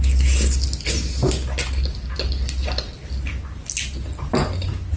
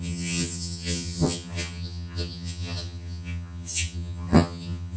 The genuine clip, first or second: first